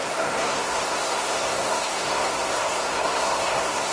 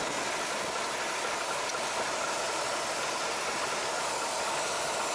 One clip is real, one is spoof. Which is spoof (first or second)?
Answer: first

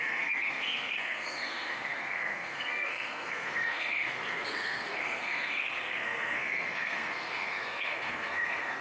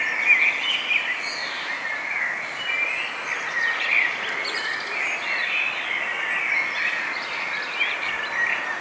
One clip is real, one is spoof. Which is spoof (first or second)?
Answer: first